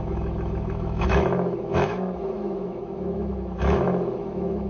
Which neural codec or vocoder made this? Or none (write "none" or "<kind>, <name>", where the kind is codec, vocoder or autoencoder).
autoencoder, DAC-VAE